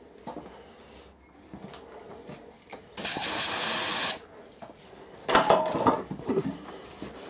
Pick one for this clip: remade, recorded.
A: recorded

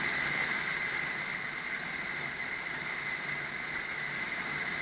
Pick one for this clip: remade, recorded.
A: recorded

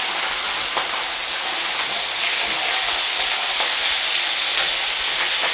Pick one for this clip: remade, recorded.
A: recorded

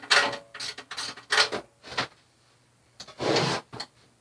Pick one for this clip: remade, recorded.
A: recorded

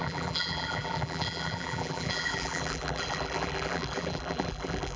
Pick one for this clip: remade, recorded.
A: remade